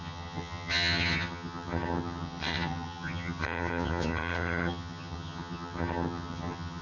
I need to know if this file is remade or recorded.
remade